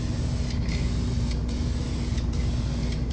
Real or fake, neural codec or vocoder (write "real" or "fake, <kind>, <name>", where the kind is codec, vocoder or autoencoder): real